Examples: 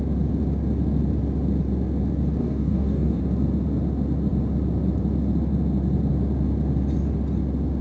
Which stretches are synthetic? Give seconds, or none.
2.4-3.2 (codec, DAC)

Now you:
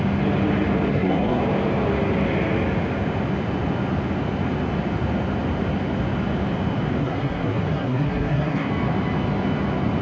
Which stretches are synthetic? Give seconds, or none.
0.9-1.4 (codec, SNAC); 7.0-8.7

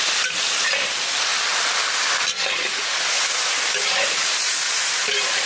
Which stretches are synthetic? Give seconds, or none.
0.0-1.3 (vocoder, BigVGAN v2); 4.0-5.5

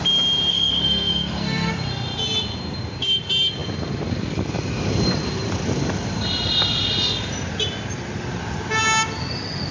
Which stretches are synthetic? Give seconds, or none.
0.5-1.7 (codec, SNAC)

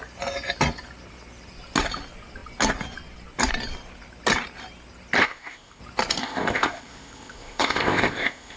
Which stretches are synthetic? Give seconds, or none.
5.2-5.8 (codec, ZipCodec); 6.2-8.6

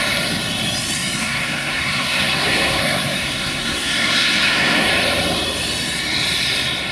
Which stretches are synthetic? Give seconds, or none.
1.2-4.9 (codec, SNAC)

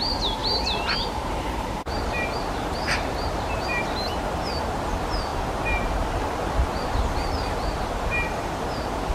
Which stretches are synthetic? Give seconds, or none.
0.4-3.9 (vocoder, BigVGAN v2)

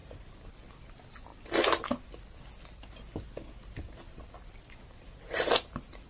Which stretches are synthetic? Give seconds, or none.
none